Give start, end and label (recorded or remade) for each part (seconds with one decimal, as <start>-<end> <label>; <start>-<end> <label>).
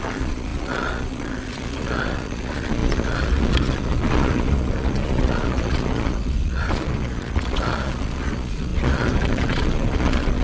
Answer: 0.0-10.4 remade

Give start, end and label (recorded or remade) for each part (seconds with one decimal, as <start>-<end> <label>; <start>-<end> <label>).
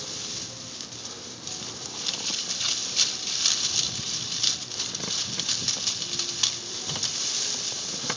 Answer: 0.0-8.2 recorded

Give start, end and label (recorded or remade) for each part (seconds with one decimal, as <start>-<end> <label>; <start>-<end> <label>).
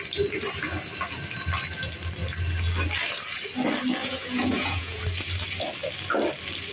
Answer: 0.0-4.0 recorded; 4.0-5.0 remade; 5.0-6.7 recorded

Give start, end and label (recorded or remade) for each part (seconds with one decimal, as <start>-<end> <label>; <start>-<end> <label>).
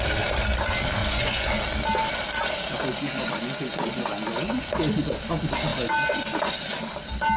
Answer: 0.0-1.0 recorded; 1.0-1.6 remade; 1.6-7.4 recorded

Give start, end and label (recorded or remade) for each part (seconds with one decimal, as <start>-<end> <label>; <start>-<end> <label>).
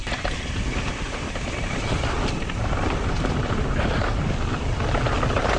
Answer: 0.0-5.6 recorded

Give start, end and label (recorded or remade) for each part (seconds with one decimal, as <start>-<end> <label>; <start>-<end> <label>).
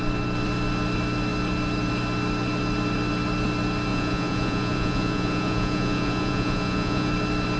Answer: 0.0-3.9 recorded; 3.9-7.1 remade; 7.1-7.6 recorded